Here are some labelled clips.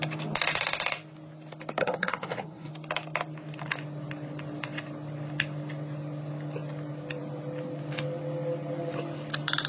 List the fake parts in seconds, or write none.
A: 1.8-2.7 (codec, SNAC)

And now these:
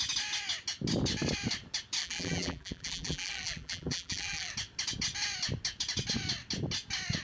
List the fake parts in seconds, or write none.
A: 2.0-4.5 (vocoder, BigVGAN v2)

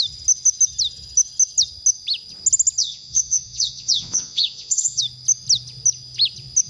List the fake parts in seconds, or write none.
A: 2.8-5.0 (vocoder, Vocos)

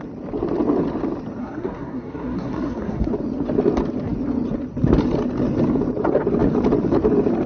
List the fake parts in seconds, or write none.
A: 1.4-3.1 (codec, SNAC)